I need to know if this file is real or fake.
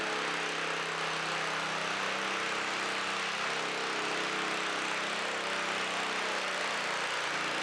real